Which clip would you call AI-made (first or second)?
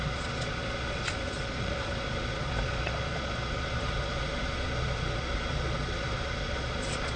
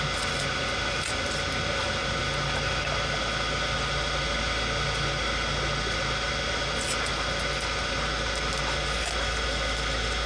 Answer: first